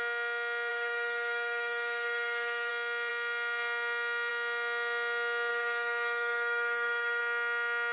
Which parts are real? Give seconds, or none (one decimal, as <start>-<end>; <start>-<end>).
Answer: 0.0-0.7; 2.7-5.5; 7.2-7.9